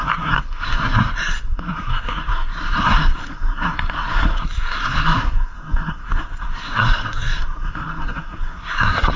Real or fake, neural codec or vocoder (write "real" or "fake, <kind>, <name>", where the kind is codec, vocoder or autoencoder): fake, codec, SNAC